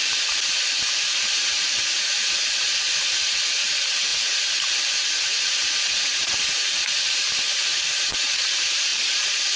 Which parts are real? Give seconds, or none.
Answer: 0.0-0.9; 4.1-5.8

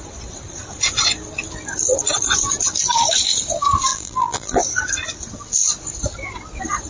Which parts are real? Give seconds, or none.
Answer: 0.0-3.9; 4.6-6.9

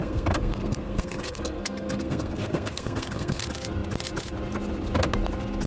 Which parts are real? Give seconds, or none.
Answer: 3.4-5.7

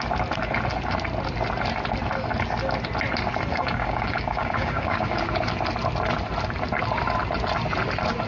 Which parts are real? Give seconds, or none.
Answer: 0.0-3.5; 5.2-8.3

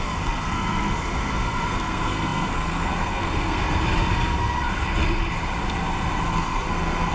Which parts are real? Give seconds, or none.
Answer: 3.6-6.3